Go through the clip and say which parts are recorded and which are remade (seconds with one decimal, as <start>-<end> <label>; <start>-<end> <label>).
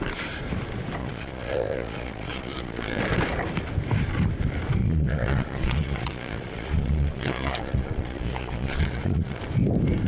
0.0-1.0 recorded; 1.0-3.0 remade; 3.0-4.8 recorded; 4.8-9.4 remade; 9.4-10.1 recorded